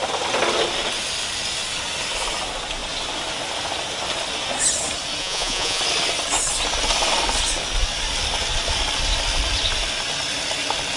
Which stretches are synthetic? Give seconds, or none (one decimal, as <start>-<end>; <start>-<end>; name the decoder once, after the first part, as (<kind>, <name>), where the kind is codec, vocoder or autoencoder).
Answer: 5.2-5.8 (vocoder, Vocos)